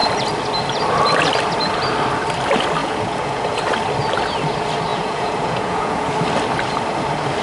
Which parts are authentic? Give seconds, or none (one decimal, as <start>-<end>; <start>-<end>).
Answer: 0.0-2.8; 3.6-4.9; 6.0-7.4